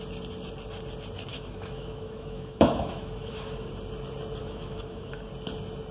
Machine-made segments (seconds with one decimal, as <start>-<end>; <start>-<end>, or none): 1.3-3.7; 4.4-5.3